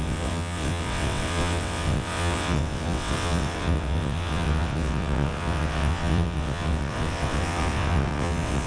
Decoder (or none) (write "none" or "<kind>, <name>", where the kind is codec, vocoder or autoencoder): vocoder, WaveNeXt